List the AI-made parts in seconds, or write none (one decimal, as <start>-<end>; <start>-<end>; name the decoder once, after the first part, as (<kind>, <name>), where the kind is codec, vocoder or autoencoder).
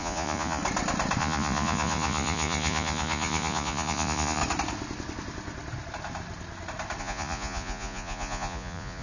0.0-0.6 (vocoder, Vocos); 1.2-4.4; 7.0-9.0